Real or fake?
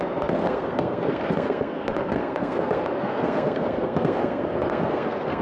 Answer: fake